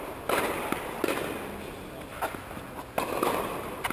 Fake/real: real